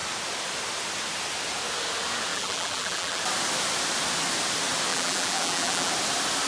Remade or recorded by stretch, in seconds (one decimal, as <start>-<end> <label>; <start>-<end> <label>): 0.0-2.3 recorded; 2.3-3.2 remade; 3.2-4.9 recorded; 4.9-5.9 remade; 5.9-6.5 recorded